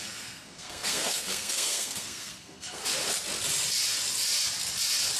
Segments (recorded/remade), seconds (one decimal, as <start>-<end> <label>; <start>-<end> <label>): 0.0-2.8 remade; 2.8-5.2 recorded